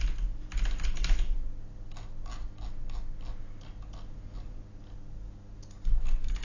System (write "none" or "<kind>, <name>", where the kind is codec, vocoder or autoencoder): none